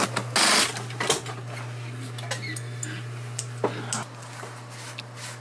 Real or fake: real